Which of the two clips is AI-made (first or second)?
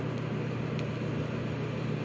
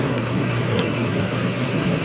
second